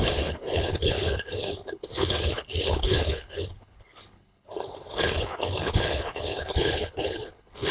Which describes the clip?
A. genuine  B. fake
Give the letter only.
B